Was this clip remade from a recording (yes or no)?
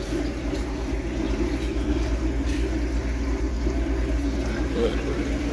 no